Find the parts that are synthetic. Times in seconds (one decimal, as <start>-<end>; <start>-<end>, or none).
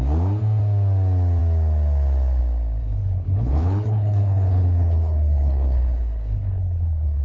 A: 2.8-7.2